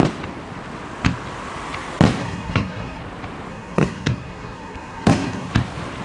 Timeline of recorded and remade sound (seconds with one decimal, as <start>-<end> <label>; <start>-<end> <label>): 0.0-2.2 recorded; 2.2-3.0 remade; 3.0-3.5 recorded; 3.5-5.5 remade; 5.5-6.0 recorded

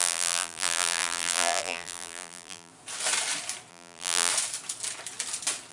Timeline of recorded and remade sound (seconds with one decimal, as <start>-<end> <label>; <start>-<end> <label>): 0.0-2.7 remade; 2.7-3.7 recorded; 3.7-4.3 remade; 4.3-5.7 recorded